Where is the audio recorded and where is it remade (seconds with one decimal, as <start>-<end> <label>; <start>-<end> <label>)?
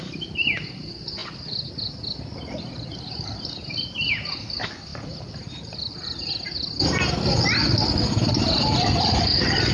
0.0-9.7 recorded